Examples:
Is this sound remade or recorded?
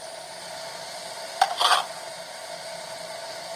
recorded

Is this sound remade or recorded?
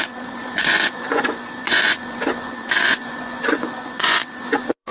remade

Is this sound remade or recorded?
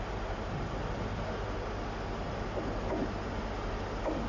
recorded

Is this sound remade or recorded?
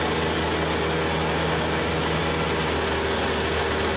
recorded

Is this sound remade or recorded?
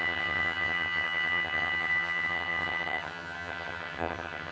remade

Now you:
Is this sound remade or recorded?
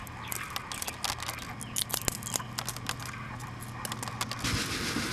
recorded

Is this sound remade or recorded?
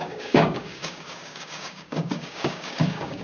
remade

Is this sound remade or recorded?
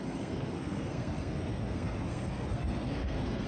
remade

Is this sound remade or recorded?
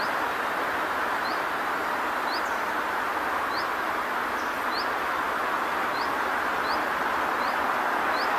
recorded